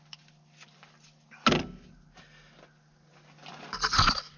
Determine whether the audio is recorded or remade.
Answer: recorded